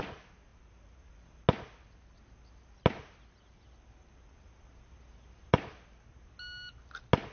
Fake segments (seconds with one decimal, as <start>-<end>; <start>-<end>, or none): none